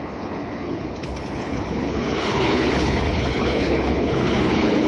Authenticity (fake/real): fake